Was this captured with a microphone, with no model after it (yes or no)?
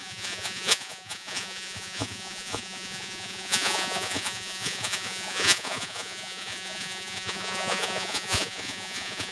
no